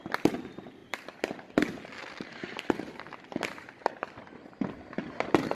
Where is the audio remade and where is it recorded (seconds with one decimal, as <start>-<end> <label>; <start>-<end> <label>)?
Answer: 0.0-5.5 recorded